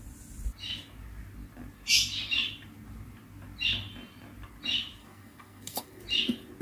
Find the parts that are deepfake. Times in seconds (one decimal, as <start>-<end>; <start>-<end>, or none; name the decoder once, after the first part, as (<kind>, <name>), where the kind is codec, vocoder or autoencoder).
5.0-6.0 (codec, SNAC)